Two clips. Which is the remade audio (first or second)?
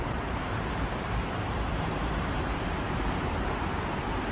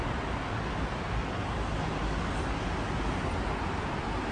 first